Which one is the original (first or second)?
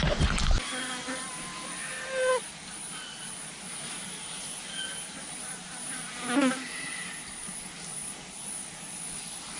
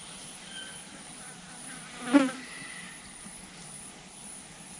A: first